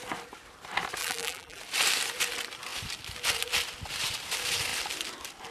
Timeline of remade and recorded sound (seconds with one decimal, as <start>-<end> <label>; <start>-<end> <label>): 0.0-1.0 recorded; 1.0-1.6 remade; 1.6-5.5 recorded